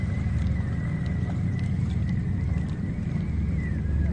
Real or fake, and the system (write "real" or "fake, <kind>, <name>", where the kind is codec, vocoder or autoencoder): real